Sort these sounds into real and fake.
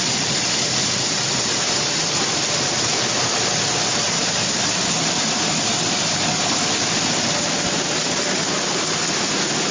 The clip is real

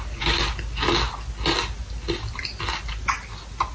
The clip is real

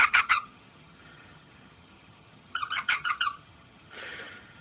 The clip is fake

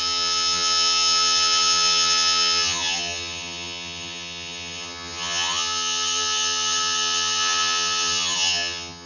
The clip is fake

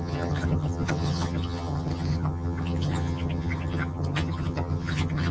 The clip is fake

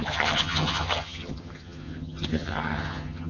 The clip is fake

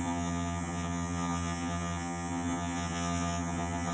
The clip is fake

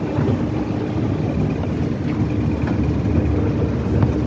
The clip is real